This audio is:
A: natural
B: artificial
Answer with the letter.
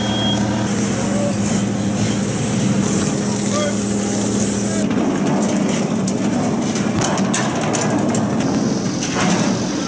A